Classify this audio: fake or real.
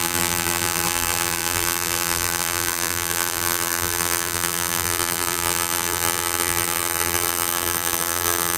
fake